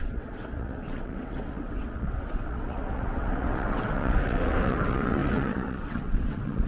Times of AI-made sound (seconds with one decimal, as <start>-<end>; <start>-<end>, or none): 0.0-6.7